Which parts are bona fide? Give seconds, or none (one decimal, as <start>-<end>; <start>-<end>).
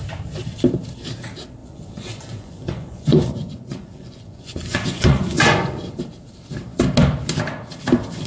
0.0-1.6; 6.0-8.3